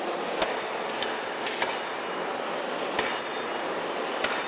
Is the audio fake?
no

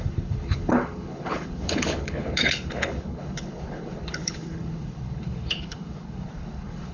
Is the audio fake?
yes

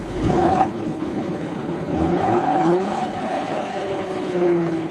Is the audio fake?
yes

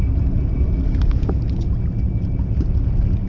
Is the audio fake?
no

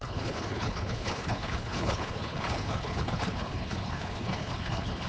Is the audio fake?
yes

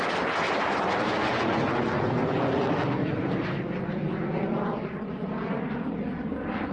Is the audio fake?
no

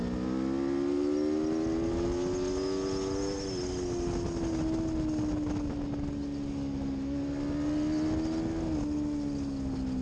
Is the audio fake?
no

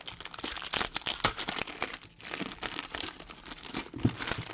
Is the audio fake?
no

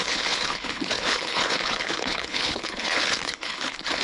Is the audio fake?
yes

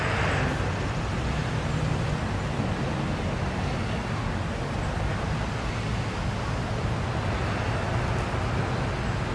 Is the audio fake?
no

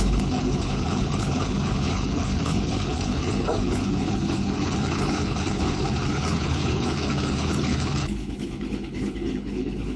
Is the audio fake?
yes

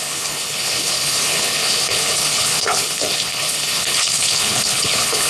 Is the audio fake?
yes